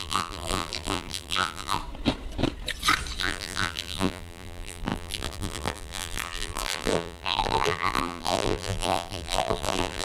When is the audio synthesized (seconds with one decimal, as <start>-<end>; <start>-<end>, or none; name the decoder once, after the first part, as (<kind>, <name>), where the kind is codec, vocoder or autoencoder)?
0.0-1.8 (vocoder, BigVGAN v2); 3.2-10.0